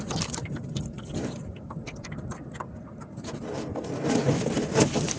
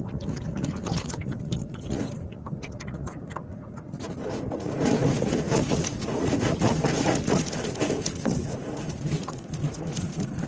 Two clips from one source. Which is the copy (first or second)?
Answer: second